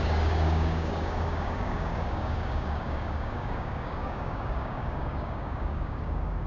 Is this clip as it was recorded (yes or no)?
no